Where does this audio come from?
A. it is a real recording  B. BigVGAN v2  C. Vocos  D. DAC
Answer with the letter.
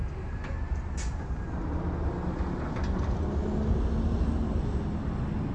A